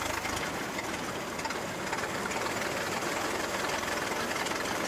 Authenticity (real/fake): real